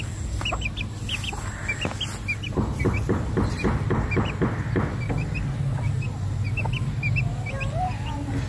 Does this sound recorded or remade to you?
recorded